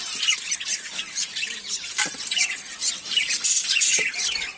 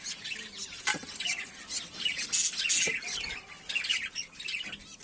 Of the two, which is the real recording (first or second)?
second